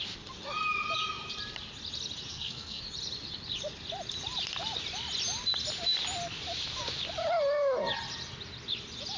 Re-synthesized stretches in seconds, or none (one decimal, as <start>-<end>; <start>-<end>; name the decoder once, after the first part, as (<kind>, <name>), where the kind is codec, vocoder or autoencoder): 2.3-2.8 (codec, SNAC)